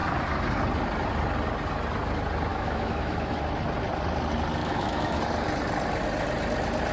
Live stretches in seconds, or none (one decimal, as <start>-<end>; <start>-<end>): 0.0-2.5; 3.4-4.6; 5.2-6.9